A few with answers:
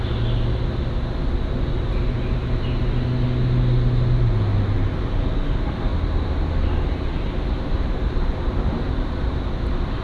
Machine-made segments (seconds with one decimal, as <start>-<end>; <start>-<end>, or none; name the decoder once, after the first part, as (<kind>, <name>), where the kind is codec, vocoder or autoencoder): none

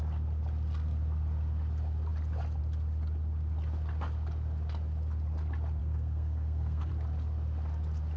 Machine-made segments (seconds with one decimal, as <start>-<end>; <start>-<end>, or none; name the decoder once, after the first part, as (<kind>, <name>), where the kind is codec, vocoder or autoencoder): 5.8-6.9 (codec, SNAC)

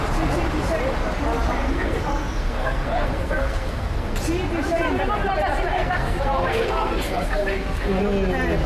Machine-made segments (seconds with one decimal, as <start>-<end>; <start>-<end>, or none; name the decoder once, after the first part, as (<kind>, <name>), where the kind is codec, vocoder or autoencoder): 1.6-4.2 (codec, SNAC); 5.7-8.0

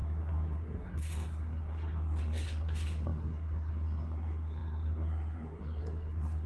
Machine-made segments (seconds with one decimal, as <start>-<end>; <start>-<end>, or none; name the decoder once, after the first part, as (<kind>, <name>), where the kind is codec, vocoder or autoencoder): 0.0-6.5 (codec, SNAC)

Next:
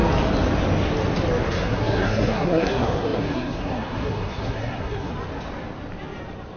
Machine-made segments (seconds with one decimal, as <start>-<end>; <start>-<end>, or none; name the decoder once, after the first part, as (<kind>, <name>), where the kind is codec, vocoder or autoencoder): 1.4-5.1 (codec, SNAC)

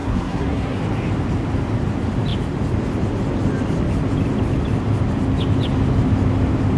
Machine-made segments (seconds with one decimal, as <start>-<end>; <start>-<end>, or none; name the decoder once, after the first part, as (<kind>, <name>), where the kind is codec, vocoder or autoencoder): 0.0-0.8 (codec, SNAC)